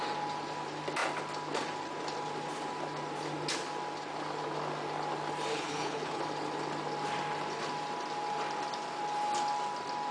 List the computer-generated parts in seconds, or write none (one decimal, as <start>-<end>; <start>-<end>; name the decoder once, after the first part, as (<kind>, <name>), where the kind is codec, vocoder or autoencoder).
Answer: 5.5-6.2 (codec, HILCodec)